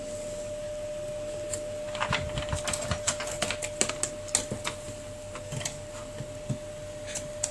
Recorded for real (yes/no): yes